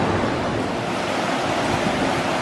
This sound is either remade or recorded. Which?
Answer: recorded